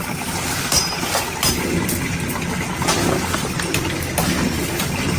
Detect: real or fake real